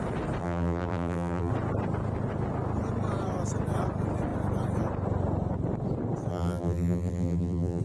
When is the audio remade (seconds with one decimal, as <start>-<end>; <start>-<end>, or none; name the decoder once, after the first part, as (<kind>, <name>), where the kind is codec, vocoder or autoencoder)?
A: 0.4-1.5 (vocoder, BigVGAN v2); 6.3-7.8